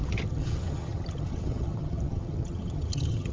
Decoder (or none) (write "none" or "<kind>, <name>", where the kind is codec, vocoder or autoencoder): vocoder, HiFi-GAN